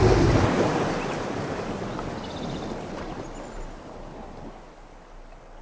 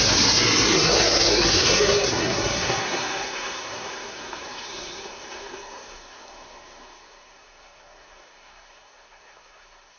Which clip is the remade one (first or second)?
second